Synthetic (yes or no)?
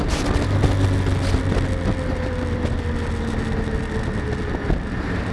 no